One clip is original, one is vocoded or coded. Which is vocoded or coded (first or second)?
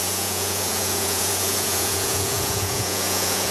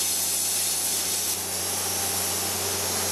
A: first